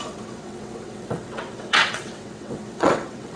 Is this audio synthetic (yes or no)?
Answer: yes